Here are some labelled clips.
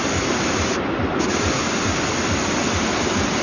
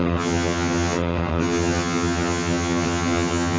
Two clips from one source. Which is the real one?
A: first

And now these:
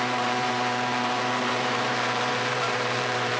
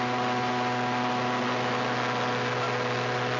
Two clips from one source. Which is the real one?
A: second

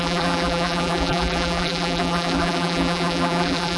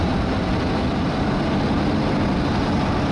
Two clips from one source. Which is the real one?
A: second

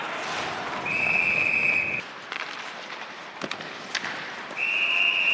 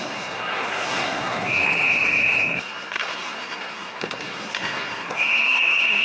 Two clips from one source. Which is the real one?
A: first